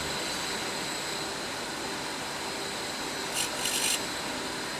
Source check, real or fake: real